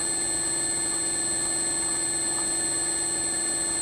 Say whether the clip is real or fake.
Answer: real